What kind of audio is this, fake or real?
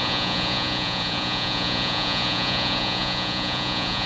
fake